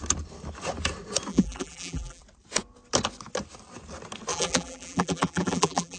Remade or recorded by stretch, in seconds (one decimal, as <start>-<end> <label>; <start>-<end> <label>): 0.0-1.3 recorded; 1.3-2.2 remade; 2.2-4.3 recorded; 4.3-6.0 remade